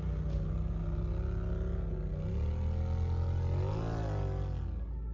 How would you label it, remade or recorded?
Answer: recorded